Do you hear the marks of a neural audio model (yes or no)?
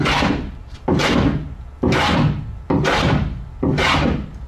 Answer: no